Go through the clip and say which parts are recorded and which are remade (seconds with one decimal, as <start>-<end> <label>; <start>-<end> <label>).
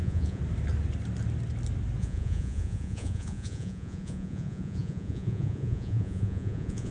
0.0-0.4 remade; 0.4-2.0 recorded; 2.0-6.9 remade